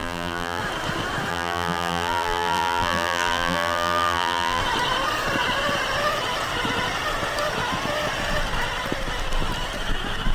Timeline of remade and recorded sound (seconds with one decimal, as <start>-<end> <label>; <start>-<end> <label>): 0.0-0.6 remade; 0.6-1.3 recorded; 1.3-4.6 remade; 4.6-10.3 recorded